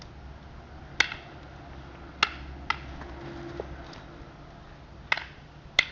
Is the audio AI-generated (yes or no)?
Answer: no